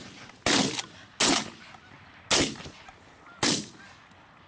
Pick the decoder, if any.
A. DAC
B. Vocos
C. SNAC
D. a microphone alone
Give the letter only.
D